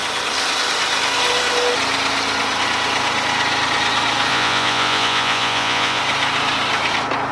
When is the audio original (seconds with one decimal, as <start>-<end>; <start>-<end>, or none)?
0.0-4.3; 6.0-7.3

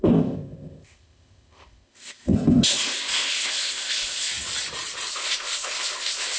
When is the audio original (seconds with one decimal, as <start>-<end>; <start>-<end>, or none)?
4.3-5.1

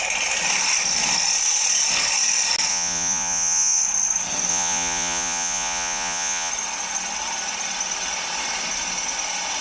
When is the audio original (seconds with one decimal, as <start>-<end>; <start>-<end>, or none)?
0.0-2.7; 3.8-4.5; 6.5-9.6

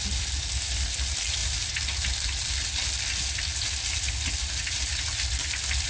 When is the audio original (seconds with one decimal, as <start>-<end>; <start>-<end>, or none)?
0.0-5.9

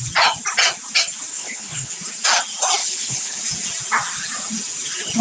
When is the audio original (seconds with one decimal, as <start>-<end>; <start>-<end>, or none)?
0.0-1.3; 1.9-2.8; 3.4-5.2